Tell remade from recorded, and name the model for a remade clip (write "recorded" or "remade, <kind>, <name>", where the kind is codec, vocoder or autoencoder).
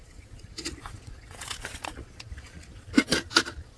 remade, vocoder, Vocos